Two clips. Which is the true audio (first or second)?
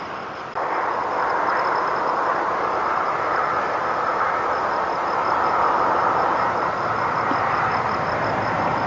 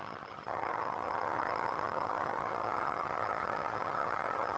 first